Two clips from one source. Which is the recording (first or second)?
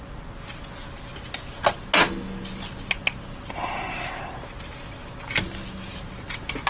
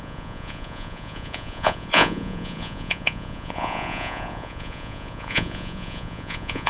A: first